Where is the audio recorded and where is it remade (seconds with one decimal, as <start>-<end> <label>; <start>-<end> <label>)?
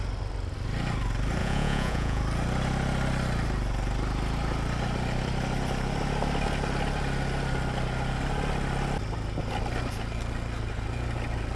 0.0-1.4 recorded; 1.4-2.2 remade; 2.2-11.6 recorded